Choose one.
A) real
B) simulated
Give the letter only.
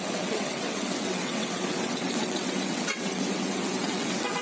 B